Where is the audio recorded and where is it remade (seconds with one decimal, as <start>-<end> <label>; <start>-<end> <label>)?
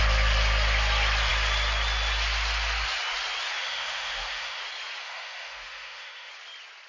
0.0-3.6 recorded; 3.6-4.6 remade; 4.6-5.0 recorded; 5.0-6.3 remade; 6.3-6.9 recorded